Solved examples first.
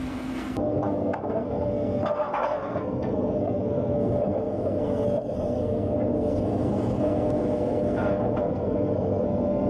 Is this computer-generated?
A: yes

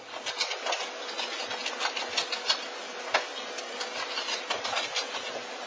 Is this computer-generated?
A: no